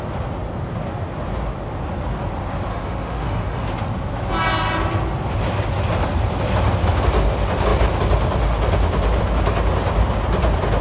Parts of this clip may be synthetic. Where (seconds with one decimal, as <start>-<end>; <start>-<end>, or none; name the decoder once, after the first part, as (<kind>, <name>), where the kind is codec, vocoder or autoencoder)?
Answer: 2.7-3.6 (autoencoder, DAC-VAE)